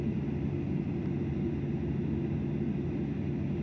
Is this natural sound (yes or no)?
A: yes